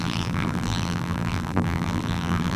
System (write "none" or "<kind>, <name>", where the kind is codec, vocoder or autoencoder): vocoder, BigVGAN v2